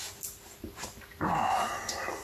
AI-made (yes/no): no